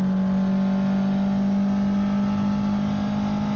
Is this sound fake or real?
real